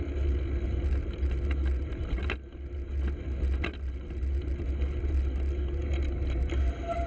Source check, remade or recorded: recorded